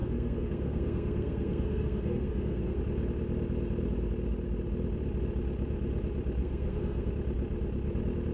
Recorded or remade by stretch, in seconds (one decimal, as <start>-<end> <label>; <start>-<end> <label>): 0.0-2.8 remade; 2.8-6.4 recorded; 6.4-7.1 remade; 7.1-8.3 recorded